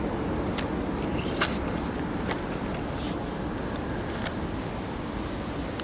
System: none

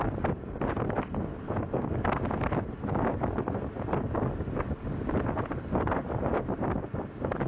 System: none